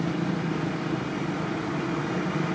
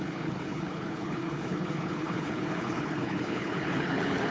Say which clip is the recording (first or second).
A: first